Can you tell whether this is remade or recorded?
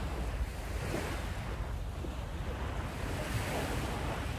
recorded